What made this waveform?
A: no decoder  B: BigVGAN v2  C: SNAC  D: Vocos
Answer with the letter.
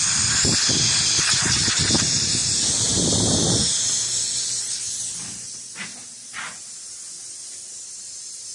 A